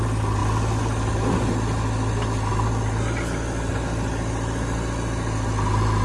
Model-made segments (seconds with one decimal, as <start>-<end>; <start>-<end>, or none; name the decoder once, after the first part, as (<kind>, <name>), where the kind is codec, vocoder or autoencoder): none